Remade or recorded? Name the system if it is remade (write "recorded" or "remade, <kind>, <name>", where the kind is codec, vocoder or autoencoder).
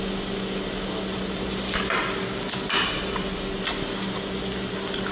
recorded